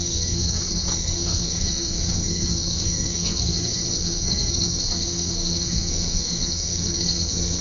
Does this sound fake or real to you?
fake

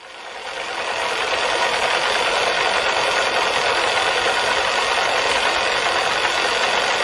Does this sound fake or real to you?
real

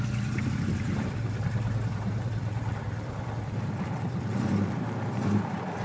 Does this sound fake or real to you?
fake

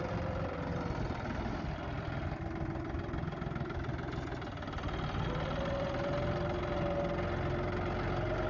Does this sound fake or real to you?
real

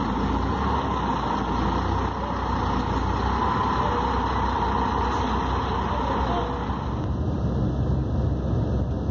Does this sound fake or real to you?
real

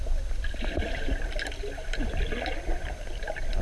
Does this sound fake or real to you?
real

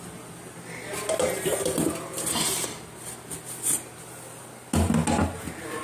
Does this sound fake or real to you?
real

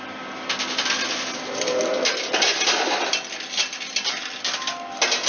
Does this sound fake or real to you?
real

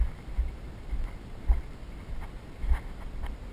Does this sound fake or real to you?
real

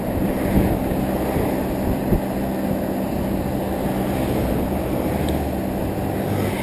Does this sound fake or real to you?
real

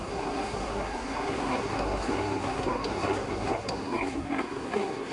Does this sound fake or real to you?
fake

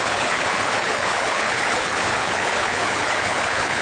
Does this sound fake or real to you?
fake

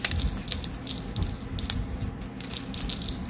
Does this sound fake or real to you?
real